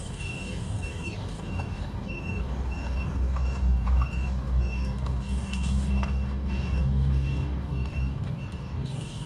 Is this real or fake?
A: fake